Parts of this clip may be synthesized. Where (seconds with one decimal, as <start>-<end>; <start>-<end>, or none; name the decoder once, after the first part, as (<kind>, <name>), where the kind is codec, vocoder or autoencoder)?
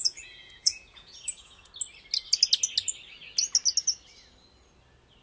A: 0.0-1.7 (vocoder, Vocos)